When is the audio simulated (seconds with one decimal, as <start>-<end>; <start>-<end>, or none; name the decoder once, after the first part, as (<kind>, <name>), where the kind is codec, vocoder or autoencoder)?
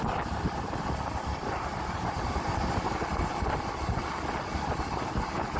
none